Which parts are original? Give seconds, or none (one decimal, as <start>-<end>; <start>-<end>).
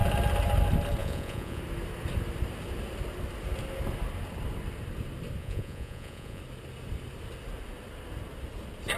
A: 0.0-1.0; 1.6-5.4; 6.4-9.0